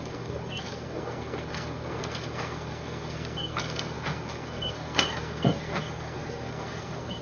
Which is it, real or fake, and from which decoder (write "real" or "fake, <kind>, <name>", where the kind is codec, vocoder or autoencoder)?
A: fake, codec, SNAC